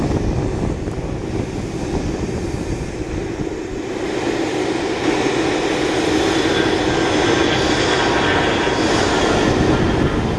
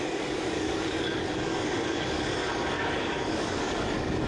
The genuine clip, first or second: first